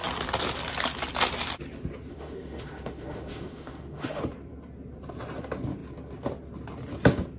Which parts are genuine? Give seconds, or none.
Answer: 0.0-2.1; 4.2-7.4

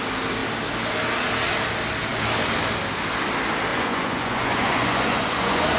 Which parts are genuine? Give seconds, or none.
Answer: 0.0-3.7

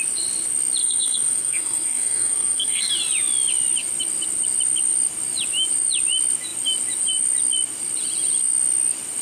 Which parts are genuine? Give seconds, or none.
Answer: 0.0-0.8; 2.9-9.2

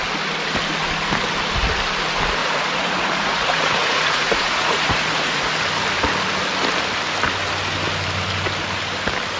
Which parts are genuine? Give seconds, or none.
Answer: 0.0-2.4; 5.4-9.4

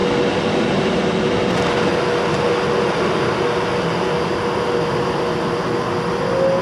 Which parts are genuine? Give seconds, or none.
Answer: 0.0-6.6

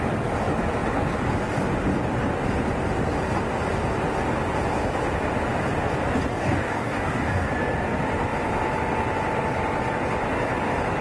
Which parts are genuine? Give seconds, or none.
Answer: 0.0-6.3; 7.5-11.0

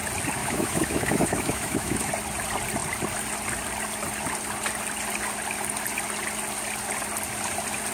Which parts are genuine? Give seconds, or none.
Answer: 0.0-0.4; 2.1-7.9

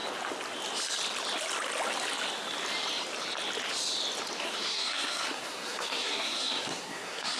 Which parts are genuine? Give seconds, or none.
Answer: 0.0-4.4